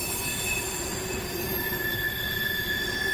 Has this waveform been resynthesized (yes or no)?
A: yes